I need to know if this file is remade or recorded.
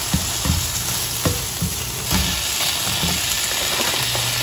recorded